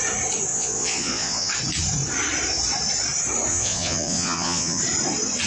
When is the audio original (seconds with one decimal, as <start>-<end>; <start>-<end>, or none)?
0.0-0.5; 1.5-3.5; 4.8-5.5